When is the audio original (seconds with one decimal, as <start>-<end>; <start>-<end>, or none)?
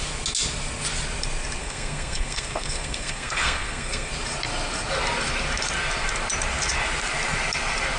0.0-1.6; 4.1-8.0